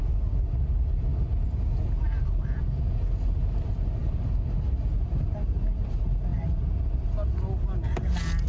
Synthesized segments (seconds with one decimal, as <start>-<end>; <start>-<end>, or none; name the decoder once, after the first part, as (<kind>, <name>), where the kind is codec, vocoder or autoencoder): none